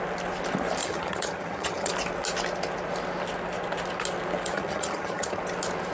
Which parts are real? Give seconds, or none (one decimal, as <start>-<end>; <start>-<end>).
0.0-0.8; 1.9-4.5; 5.4-5.9